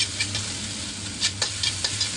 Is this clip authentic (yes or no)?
yes